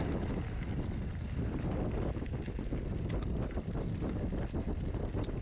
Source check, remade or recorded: recorded